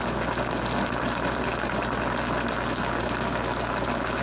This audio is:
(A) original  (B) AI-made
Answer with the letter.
A